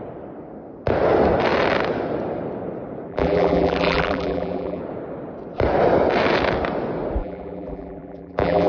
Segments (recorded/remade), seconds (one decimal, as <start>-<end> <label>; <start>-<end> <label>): 0.0-3.1 recorded; 3.1-4.8 remade; 4.8-7.2 recorded; 7.2-8.7 remade